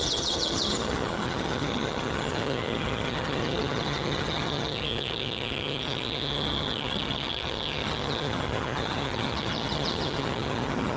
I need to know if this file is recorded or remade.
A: remade